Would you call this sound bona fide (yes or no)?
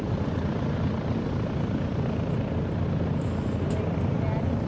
yes